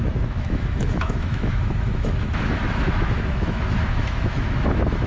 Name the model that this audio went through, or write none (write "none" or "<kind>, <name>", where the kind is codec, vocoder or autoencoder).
autoencoder, DAC-VAE